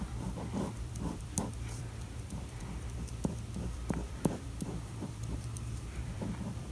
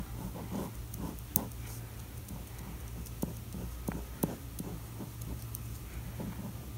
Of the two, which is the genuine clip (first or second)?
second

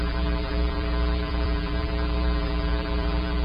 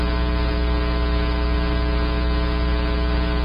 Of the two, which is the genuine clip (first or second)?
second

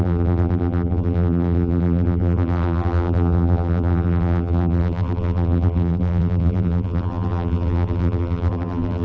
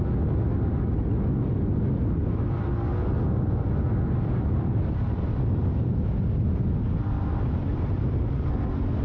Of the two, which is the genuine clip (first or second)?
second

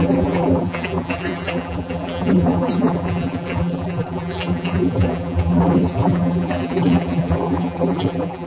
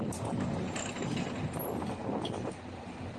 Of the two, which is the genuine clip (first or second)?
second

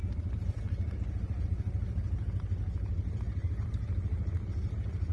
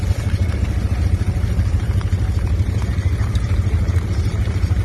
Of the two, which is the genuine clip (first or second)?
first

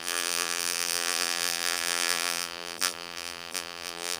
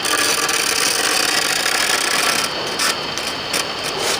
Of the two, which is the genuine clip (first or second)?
second